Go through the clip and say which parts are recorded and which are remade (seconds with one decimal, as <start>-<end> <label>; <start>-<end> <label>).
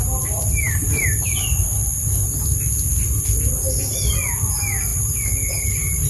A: 0.0-6.1 recorded